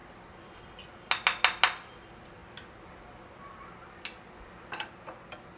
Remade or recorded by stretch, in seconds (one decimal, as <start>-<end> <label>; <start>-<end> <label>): 0.0-5.6 recorded